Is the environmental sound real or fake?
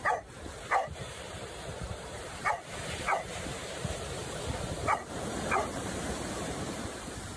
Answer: fake